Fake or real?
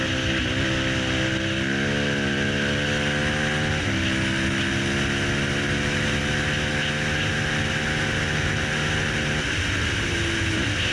real